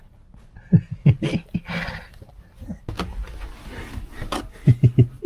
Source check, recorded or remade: recorded